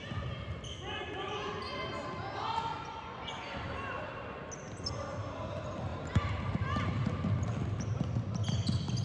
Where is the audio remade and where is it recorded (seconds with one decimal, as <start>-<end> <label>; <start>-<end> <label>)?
0.0-2.7 recorded; 2.7-3.7 remade; 3.7-9.0 recorded

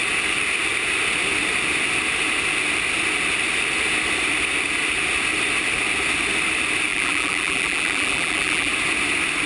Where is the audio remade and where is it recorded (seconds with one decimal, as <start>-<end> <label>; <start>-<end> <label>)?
0.0-6.9 recorded; 6.9-8.7 remade; 8.7-9.5 recorded

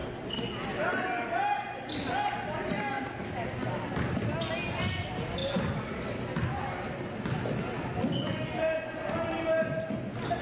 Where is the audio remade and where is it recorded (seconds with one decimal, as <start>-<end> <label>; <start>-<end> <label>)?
0.0-10.4 recorded